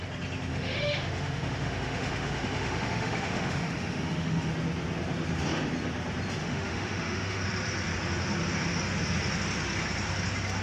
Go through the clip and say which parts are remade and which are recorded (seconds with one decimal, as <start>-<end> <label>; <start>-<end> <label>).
0.0-0.5 recorded; 0.5-4.5 remade; 4.5-6.4 recorded; 6.4-7.4 remade; 7.4-10.6 recorded